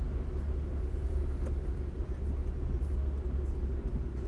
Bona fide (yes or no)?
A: yes